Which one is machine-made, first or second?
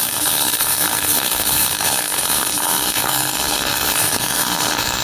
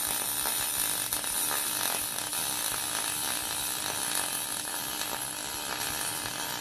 first